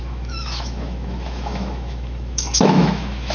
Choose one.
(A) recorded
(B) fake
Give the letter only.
B